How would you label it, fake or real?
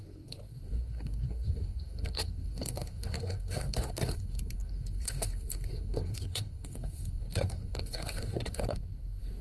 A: fake